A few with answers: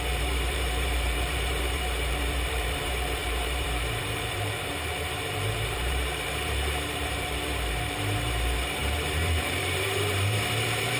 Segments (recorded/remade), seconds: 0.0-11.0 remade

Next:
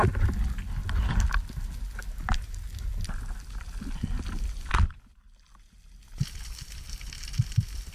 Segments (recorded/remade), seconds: 0.0-4.7 recorded; 4.7-5.6 remade; 5.6-7.9 recorded